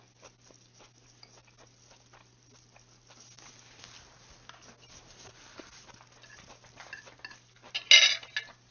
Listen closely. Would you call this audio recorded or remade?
recorded